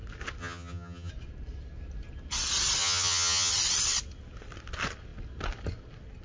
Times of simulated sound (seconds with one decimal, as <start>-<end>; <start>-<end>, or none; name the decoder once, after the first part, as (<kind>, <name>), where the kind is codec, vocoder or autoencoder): 0.4-1.1 (vocoder, HiFi-GAN); 2.8-3.5